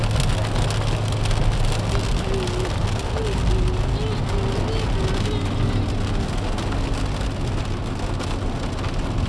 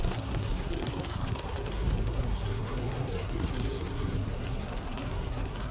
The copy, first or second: second